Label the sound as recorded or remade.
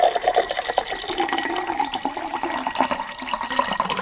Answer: recorded